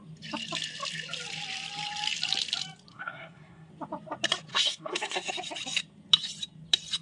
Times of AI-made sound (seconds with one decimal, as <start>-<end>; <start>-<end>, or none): 2.9-3.7; 4.5-5.3